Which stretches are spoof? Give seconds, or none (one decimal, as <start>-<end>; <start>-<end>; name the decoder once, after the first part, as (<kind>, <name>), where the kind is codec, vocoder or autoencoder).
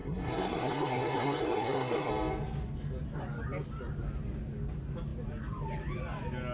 0.0-2.1 (codec, SNAC)